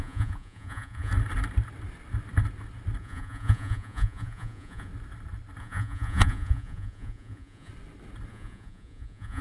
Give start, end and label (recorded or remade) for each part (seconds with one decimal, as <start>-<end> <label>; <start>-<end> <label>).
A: 0.0-1.1 remade; 1.1-3.0 recorded; 3.0-4.9 remade; 4.9-5.6 recorded; 5.6-7.7 remade; 7.7-8.3 recorded; 8.3-9.4 remade